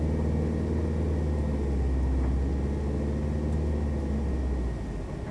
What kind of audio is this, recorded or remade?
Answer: recorded